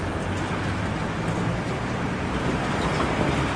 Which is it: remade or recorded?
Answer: recorded